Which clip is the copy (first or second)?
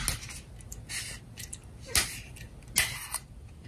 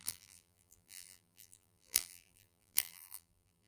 second